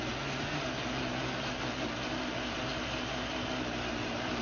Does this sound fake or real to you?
real